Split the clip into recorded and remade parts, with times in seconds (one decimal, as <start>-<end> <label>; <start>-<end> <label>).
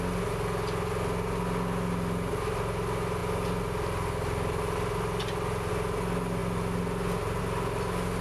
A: 0.0-8.2 recorded